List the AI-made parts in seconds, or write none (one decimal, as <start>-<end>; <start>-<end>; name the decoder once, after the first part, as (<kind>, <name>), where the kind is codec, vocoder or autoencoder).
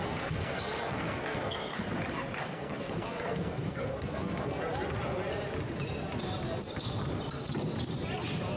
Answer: 0.0-1.8 (codec, SNAC); 2.4-4.6